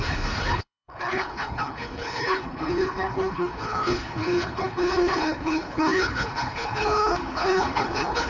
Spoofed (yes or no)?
yes